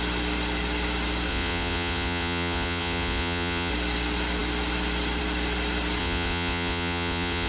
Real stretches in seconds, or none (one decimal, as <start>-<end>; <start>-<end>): 0.0-1.3; 3.7-6.0